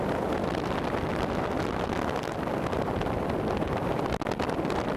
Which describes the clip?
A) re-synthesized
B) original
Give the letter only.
B